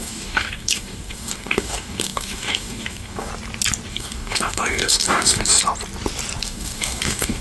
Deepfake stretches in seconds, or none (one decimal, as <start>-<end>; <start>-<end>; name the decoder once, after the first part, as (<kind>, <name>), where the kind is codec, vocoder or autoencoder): 0.0-3.3 (codec, DAC); 3.9-5.6; 6.4-7.4